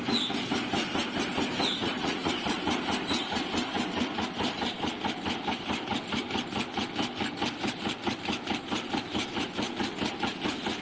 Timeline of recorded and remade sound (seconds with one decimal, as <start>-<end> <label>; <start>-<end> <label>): 0.0-1.8 recorded; 1.8-2.3 remade; 2.3-10.8 recorded